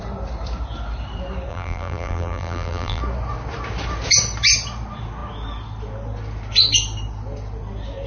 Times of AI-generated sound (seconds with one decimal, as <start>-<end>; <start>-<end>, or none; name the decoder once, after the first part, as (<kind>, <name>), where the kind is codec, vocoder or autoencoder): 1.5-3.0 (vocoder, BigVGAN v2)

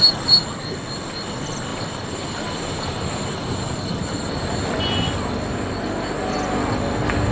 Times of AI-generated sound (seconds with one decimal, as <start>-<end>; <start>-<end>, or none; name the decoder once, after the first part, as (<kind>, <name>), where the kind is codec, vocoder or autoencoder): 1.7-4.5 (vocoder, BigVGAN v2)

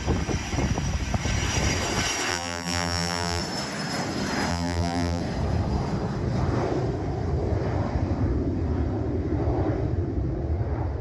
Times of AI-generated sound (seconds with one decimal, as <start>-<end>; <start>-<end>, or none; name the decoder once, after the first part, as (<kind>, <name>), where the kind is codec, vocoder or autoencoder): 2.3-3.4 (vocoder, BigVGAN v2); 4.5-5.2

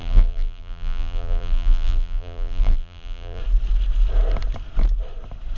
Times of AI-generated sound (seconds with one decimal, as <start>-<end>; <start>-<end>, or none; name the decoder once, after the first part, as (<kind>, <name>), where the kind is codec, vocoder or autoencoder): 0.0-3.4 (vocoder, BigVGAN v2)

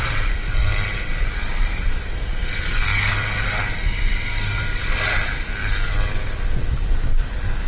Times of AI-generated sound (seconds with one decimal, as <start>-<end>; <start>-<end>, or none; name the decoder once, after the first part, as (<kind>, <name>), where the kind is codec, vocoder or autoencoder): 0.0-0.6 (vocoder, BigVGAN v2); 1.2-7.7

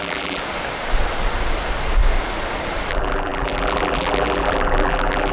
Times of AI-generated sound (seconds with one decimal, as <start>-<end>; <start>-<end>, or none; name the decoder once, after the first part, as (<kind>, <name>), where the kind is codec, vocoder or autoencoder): 0.0-0.4 (vocoder, BigVGAN v2); 2.9-5.3

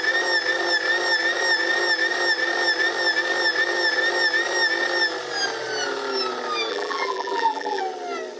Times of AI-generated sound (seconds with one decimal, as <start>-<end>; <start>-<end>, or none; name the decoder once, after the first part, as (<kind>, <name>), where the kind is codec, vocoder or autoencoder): 6.7-7.8 (vocoder, BigVGAN v2)